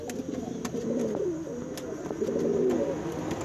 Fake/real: real